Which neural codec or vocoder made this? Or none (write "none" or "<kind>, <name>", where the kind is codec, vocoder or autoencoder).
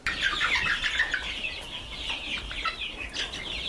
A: none